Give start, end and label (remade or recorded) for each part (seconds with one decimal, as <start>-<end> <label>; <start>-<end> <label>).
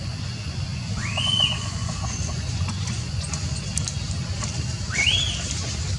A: 0.0-3.7 remade; 3.7-6.0 recorded